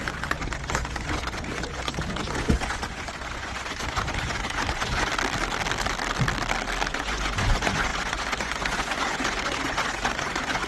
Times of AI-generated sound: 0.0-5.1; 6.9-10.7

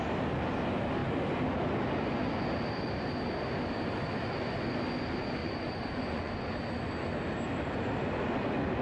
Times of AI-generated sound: 5.4-6.5

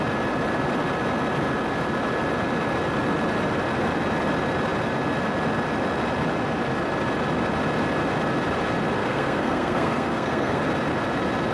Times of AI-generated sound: 9.0-10.6